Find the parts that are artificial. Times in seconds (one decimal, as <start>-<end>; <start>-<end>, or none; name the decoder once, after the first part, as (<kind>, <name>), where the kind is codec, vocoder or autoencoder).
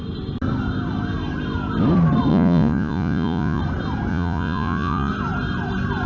2.3-3.6 (vocoder, Vocos); 4.1-5.1